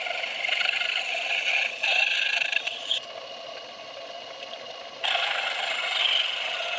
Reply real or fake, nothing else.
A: real